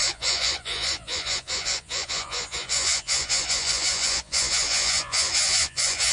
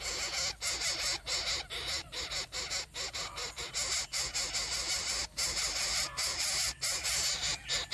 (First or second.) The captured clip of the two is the second